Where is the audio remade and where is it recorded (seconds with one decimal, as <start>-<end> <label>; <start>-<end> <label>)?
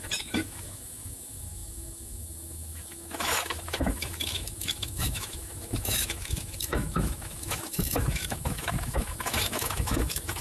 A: 0.0-10.4 remade